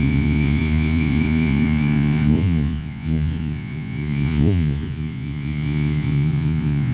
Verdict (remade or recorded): remade